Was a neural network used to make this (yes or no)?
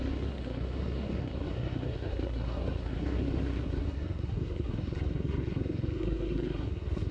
yes